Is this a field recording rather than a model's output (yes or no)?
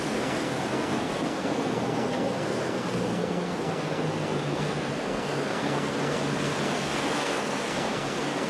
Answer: no